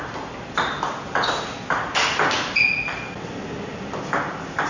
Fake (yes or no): no